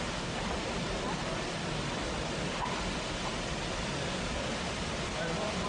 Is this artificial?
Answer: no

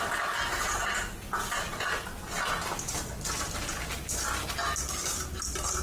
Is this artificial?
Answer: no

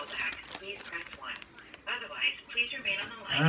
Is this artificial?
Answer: no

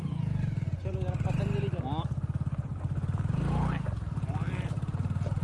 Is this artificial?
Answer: no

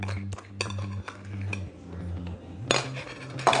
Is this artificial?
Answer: no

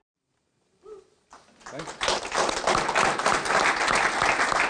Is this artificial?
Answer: no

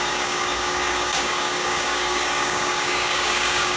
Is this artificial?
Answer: yes